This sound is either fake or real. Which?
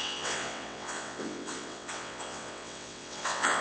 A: fake